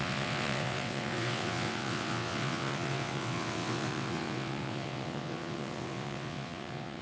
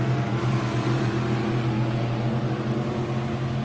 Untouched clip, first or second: second